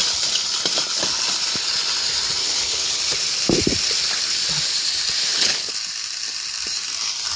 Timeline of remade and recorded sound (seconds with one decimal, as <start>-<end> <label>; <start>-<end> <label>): 0.0-2.4 recorded; 2.4-3.0 remade; 3.0-5.2 recorded; 5.2-5.7 remade; 5.7-7.4 recorded